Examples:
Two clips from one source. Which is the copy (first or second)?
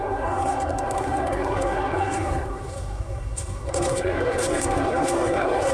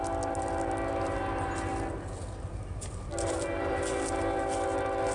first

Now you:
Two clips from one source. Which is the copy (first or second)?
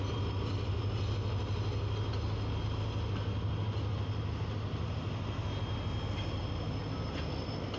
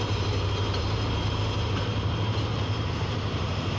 second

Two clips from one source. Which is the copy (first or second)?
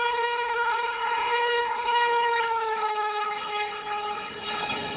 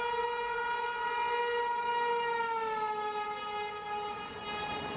first